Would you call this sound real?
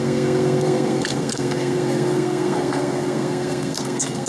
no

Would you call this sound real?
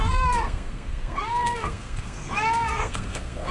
no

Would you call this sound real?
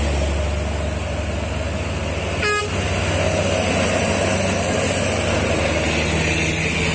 yes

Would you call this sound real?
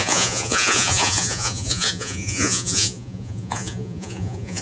no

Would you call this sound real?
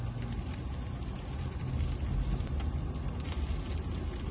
yes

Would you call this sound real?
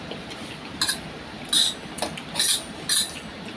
yes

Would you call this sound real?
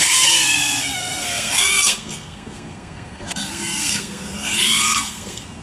no